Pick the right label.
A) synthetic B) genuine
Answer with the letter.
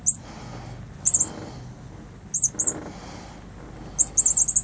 B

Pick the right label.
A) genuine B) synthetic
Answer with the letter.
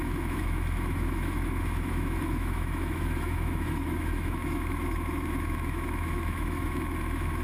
B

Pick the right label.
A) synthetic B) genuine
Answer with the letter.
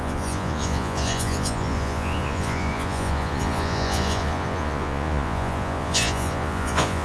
A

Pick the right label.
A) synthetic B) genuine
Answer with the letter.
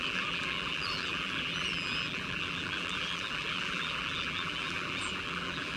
A